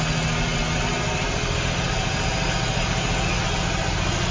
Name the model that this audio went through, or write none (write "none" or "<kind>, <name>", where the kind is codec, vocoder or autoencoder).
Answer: none